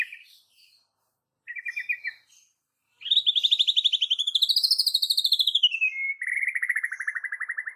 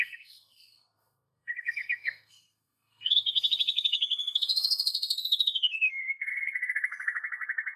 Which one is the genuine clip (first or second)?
first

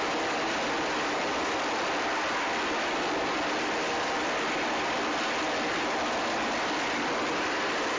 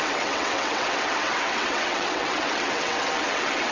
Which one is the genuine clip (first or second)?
first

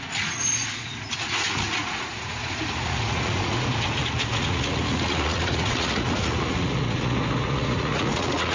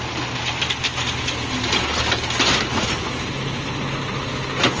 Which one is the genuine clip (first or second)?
second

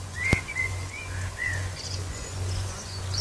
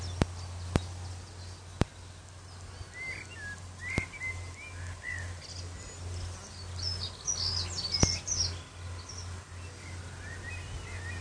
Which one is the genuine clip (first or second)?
second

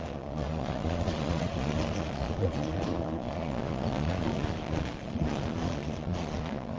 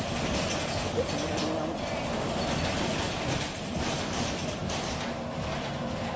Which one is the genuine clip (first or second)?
second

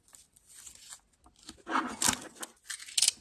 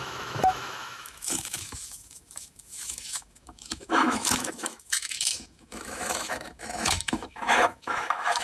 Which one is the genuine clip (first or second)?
first